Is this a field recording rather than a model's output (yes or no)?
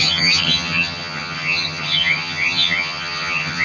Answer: no